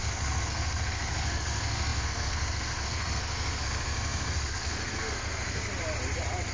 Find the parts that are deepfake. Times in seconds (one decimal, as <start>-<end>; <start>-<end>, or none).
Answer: 0.0-5.6